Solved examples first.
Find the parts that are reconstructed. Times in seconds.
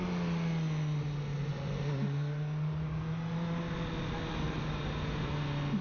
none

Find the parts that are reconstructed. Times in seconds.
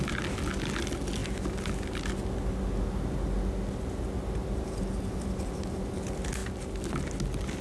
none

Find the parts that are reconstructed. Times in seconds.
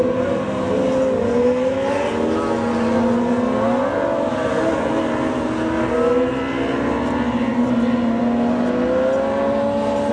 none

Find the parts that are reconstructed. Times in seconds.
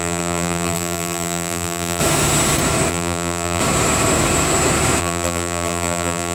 0.0-2.0 (vocoder, BigVGAN v2); 2.9-3.6; 5.0-6.3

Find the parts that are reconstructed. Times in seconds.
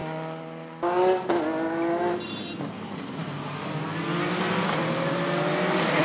none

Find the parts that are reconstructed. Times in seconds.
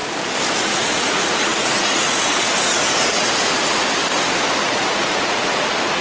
0.6-4.0 (vocoder, Vocos); 4.6-6.0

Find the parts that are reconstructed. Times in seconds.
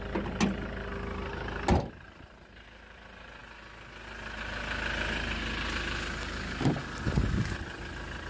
none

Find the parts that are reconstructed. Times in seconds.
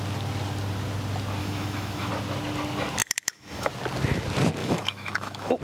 1.4-2.1 (autoencoder, DAC-VAE); 3.0-3.7; 4.6-5.6